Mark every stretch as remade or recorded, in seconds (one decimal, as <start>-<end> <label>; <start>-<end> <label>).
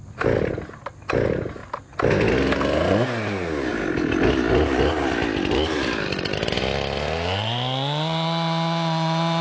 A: 0.0-9.4 recorded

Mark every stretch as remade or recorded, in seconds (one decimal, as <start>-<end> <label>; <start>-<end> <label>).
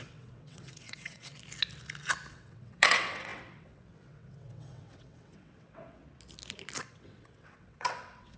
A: 0.0-1.3 remade; 1.3-2.3 recorded; 2.3-6.0 remade; 6.0-6.9 recorded; 6.9-8.4 remade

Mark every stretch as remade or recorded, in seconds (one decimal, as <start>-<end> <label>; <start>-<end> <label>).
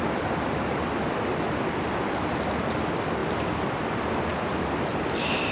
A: 0.0-5.5 recorded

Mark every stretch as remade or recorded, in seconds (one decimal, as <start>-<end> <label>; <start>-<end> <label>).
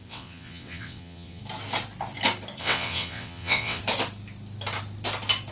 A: 0.0-1.4 remade; 1.4-2.6 recorded; 2.6-3.8 remade; 3.8-5.5 recorded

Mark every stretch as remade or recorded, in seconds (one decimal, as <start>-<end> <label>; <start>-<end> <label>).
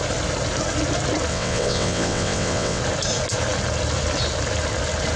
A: 0.0-1.3 recorded; 1.3-2.8 remade; 2.8-5.2 recorded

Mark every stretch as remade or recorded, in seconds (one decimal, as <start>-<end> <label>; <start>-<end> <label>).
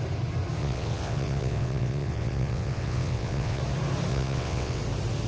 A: 0.0-0.6 recorded; 0.6-3.6 remade; 3.6-4.1 recorded; 4.1-4.8 remade; 4.8-5.3 recorded